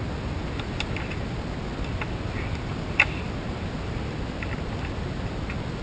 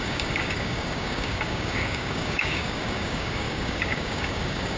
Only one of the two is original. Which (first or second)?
first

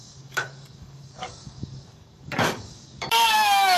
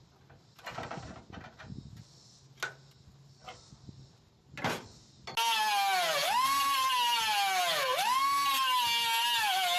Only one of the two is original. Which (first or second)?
second